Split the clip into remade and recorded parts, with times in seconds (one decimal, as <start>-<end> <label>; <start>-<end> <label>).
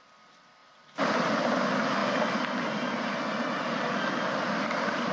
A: 0.0-5.1 recorded